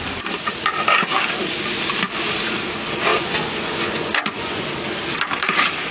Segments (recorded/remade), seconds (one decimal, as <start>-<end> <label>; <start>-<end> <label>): 0.0-3.1 recorded; 3.1-4.7 remade; 4.7-5.9 recorded

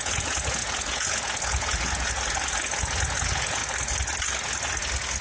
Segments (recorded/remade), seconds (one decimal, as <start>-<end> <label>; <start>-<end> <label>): 0.0-3.6 remade; 3.6-5.2 recorded

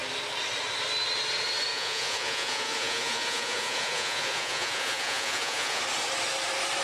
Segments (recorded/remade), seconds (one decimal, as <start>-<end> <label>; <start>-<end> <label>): 0.0-1.7 recorded; 1.7-5.8 remade; 5.8-6.8 recorded

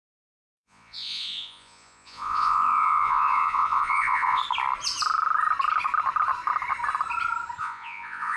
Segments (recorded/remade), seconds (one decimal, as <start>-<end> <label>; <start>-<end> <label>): 0.0-4.4 remade; 4.4-7.6 recorded; 7.6-8.4 remade

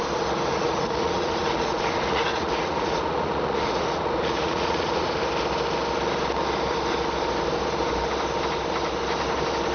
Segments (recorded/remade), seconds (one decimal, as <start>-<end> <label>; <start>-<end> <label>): 0.0-0.5 recorded; 0.5-5.2 remade; 5.2-9.7 recorded

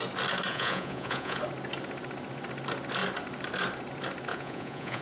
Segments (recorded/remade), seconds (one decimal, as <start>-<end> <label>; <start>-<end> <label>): 0.0-0.5 recorded; 0.5-1.4 remade; 1.4-4.3 recorded; 4.3-5.0 remade

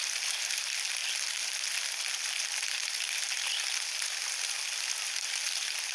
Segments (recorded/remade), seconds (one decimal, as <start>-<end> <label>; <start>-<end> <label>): 0.0-5.9 recorded

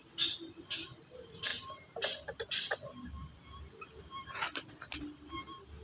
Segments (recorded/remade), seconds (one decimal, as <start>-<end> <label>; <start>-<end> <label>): 0.0-5.8 recorded